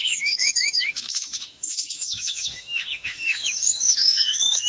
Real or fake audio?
fake